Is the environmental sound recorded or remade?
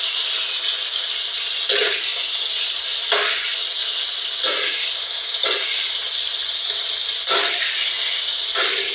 recorded